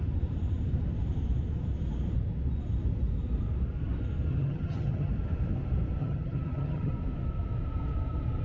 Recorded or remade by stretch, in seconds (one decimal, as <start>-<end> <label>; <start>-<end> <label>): 0.0-4.3 recorded; 4.3-5.1 remade; 5.1-6.0 recorded; 6.0-6.9 remade; 6.9-8.4 recorded